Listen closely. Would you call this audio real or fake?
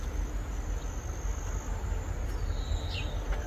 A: real